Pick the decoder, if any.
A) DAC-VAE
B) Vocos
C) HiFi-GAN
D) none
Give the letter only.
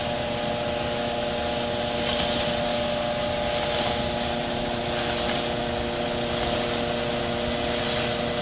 D